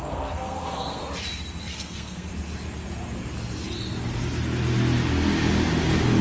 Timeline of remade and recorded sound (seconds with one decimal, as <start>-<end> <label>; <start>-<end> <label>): 0.0-1.0 remade; 1.0-1.6 recorded; 1.6-2.3 remade; 2.3-6.2 recorded